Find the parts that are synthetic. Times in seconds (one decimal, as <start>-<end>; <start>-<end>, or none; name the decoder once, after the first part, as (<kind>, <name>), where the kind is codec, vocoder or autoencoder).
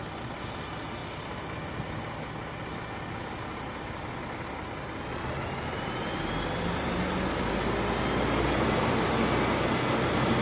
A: none